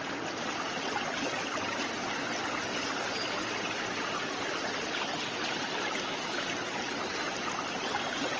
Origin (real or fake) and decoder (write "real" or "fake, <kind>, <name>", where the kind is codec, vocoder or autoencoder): real